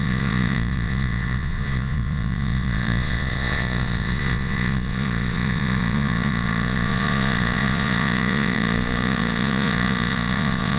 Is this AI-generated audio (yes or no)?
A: yes